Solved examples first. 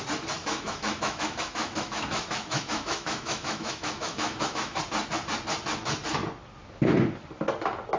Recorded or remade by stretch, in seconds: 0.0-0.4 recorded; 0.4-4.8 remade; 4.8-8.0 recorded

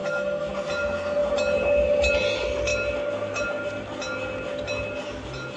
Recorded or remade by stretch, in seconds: 0.0-0.5 remade; 0.5-5.6 recorded

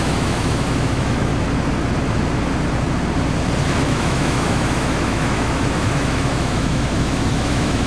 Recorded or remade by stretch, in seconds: 0.0-1.3 remade; 1.3-3.8 recorded; 3.8-7.9 remade

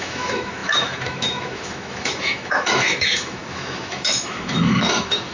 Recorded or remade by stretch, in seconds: 0.0-5.3 remade

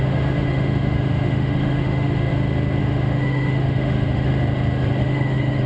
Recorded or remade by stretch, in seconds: 0.0-2.3 remade; 2.3-2.8 recorded; 2.8-4.3 remade; 4.3-5.0 recorded; 5.0-5.7 remade

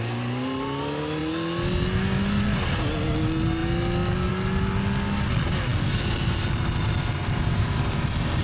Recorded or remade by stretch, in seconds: 0.0-8.4 recorded